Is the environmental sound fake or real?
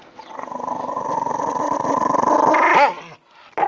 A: real